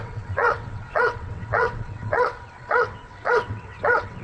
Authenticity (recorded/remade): remade